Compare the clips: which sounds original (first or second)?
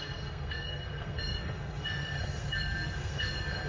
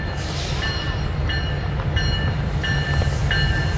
second